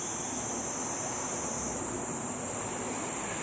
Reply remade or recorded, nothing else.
recorded